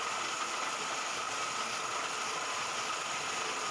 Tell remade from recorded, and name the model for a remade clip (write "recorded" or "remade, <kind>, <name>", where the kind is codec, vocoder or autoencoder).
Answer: remade, vocoder, BigVGAN v2